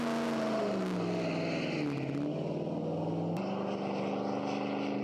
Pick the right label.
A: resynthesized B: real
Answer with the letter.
B